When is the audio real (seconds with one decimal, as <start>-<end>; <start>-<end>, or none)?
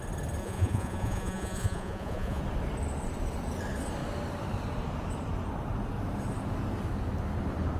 0.0-0.4; 2.4-7.8